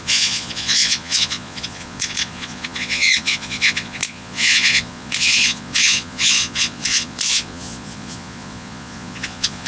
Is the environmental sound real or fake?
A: fake